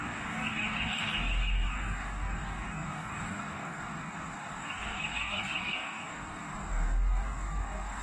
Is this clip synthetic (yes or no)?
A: yes